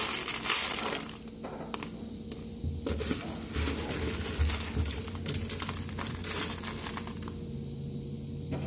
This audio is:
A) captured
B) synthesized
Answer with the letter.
A